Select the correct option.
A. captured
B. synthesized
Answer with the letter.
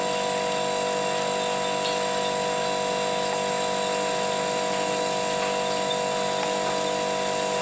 A